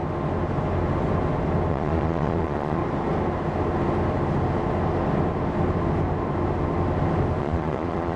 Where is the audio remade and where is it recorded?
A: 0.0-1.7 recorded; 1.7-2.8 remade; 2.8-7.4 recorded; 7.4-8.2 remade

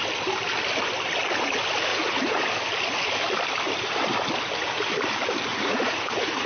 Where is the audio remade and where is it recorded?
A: 0.0-1.9 recorded; 1.9-2.4 remade; 2.4-5.5 recorded; 5.5-6.5 remade

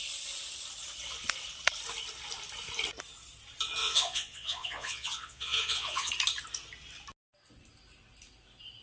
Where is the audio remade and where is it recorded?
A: 0.0-3.8 recorded; 3.8-6.1 remade; 6.1-8.8 recorded

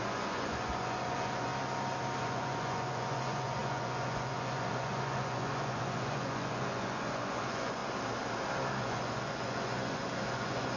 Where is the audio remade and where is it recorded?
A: 0.0-1.5 remade; 1.5-2.2 recorded; 2.2-7.8 remade; 7.8-8.8 recorded; 8.8-10.8 remade

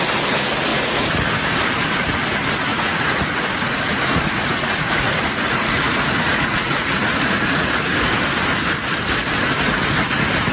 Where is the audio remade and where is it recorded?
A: 0.0-0.7 recorded; 0.7-1.2 remade; 1.2-2.7 recorded; 2.7-7.7 remade; 7.7-10.5 recorded

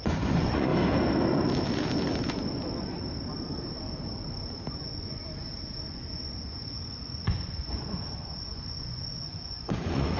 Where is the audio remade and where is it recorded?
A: 0.0-0.7 remade; 0.7-4.7 recorded; 4.7-5.2 remade; 5.2-5.9 recorded; 5.9-10.2 remade

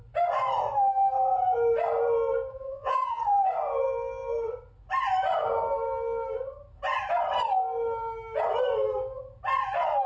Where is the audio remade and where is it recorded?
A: 0.0-2.5 recorded; 2.5-3.2 remade; 3.2-10.1 recorded

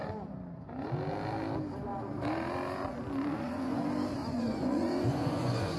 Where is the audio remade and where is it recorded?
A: 0.0-3.3 recorded; 3.3-3.8 remade; 3.8-4.2 recorded; 4.2-5.8 remade